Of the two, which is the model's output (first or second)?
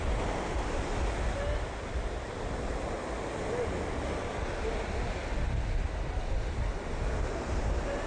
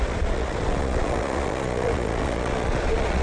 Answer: second